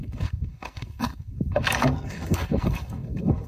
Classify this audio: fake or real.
fake